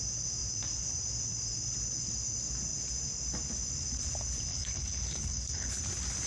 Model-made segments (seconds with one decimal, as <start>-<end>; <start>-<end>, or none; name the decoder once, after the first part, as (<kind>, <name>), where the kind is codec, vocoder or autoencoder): 4.5-5.8 (codec, HILCodec)